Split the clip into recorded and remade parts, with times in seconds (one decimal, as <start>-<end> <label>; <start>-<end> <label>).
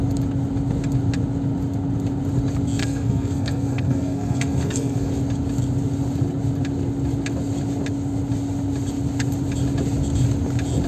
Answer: 0.0-2.8 recorded; 2.8-5.1 remade; 5.1-10.9 recorded